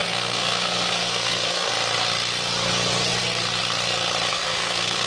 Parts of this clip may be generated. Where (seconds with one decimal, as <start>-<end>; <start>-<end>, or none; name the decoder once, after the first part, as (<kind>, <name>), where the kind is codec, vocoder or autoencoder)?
0.0-1.7 (codec, SNAC); 4.3-5.1